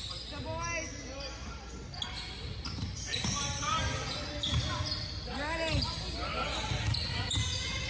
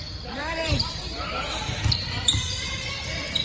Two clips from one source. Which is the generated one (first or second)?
second